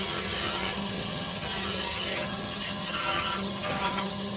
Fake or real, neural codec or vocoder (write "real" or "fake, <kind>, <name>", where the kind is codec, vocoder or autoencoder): fake, vocoder, HiFi-GAN